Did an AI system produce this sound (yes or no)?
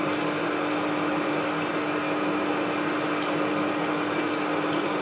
no